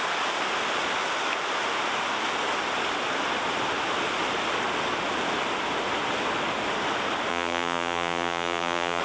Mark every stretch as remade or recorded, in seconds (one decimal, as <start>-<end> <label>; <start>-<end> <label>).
0.0-7.3 recorded; 7.3-9.0 remade